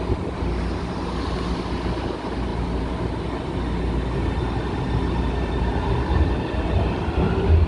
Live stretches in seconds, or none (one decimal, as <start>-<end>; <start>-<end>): 0.0-7.7